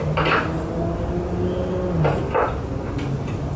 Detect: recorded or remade recorded